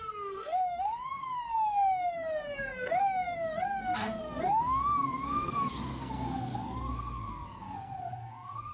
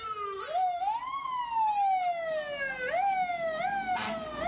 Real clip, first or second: second